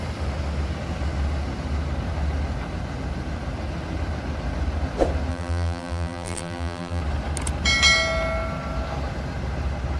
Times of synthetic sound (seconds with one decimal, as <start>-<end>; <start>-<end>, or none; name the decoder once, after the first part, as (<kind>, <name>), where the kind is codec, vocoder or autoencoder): 5.3-7.0 (vocoder, BigVGAN v2)